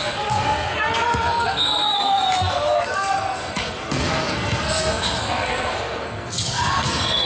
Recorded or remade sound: remade